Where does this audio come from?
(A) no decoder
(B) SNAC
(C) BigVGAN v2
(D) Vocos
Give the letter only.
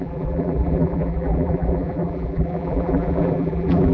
C